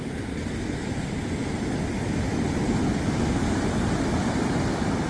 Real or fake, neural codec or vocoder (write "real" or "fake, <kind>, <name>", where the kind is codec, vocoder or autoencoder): real